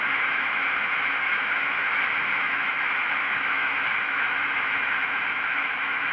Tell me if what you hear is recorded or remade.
remade